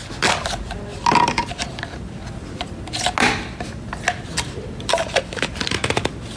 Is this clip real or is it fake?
real